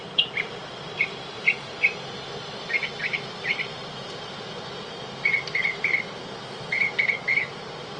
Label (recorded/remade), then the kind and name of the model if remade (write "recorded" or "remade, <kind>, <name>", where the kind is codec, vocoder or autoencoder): remade, vocoder, BigVGAN v2